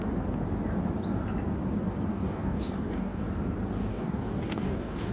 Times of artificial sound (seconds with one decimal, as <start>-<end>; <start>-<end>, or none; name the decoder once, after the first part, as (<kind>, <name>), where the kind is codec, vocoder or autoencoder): 2.1-3.2 (codec, DAC); 3.9-5.1